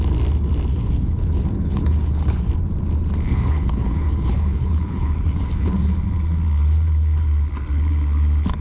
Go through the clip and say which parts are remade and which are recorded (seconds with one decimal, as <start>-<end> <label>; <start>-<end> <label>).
0.0-0.7 recorded; 0.7-2.5 remade; 2.5-3.3 recorded; 3.3-5.8 remade; 5.8-8.6 recorded